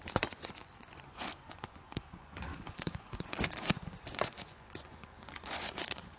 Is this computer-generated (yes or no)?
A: yes